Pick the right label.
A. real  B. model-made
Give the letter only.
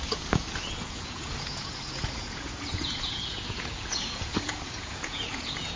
B